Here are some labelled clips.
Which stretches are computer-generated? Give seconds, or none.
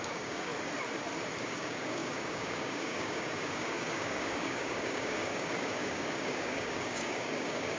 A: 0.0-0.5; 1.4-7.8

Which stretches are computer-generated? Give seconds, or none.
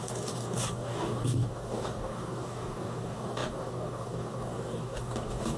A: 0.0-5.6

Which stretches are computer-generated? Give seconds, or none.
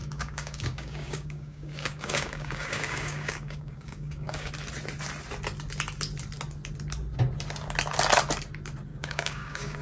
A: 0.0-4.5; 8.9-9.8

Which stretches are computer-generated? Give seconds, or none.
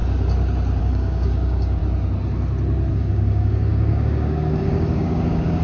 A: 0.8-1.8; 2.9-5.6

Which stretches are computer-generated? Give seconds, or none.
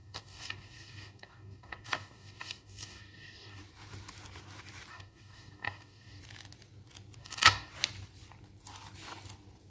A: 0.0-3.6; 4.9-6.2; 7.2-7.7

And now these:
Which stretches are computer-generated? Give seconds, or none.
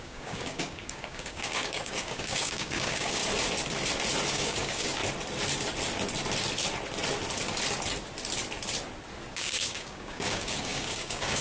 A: 0.0-3.2; 4.3-5.0; 9.3-11.4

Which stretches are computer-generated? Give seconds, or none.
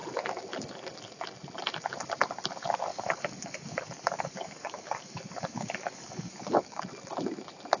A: 2.9-6.8